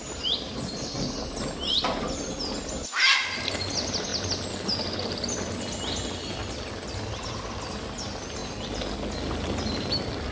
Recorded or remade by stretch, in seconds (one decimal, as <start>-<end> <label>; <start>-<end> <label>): 0.0-10.3 recorded

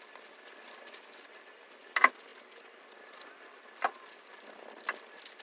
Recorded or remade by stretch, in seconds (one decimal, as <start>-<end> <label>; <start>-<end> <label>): 0.0-5.4 recorded

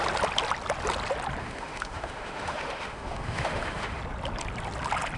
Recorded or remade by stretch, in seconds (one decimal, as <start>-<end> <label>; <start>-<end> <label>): 0.0-1.4 recorded; 1.4-4.0 remade; 4.0-5.2 recorded